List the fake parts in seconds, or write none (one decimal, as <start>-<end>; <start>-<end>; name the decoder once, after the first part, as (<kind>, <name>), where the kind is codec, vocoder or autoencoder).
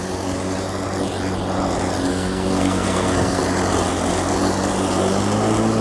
2.1-3.4 (codec, SNAC)